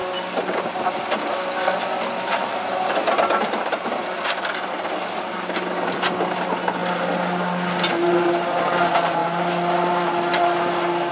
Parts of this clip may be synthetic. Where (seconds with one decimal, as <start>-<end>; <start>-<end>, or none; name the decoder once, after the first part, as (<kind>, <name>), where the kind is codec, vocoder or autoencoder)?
none